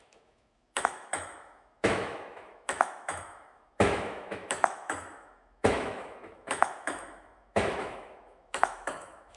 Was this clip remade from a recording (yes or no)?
yes